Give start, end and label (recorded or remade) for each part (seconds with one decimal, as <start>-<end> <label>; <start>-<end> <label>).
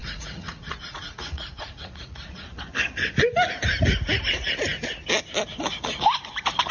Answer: 0.0-2.6 remade; 2.6-6.7 recorded